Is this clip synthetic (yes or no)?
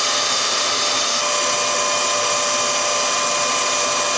no